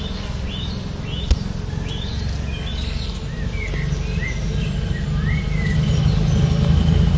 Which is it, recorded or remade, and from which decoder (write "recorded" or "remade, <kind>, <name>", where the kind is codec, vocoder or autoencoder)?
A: recorded